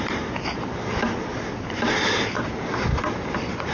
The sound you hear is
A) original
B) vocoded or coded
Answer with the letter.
A